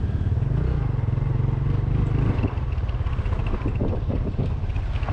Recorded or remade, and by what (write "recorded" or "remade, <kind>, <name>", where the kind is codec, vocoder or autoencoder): recorded